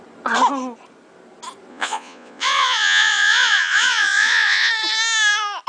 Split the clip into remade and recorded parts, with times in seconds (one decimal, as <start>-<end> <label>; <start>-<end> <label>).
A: 0.0-1.7 recorded; 1.7-4.7 remade; 4.7-5.7 recorded